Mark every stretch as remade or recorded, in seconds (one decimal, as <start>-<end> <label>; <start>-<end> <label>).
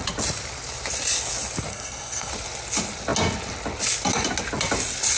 0.0-1.7 recorded; 1.7-2.3 remade; 2.3-5.2 recorded